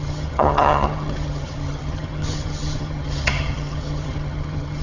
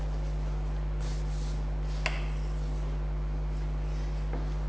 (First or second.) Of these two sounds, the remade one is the first